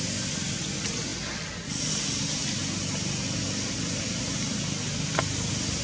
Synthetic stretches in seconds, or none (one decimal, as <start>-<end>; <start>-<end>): none